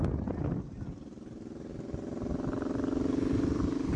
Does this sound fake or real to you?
real